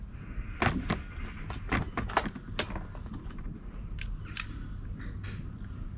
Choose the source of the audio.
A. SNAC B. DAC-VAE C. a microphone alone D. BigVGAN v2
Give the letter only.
C